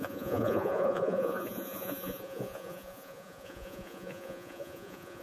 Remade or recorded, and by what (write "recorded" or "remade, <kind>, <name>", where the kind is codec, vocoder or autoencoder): remade, vocoder, Vocos